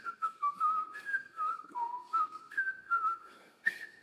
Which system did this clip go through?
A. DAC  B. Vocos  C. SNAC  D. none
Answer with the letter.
C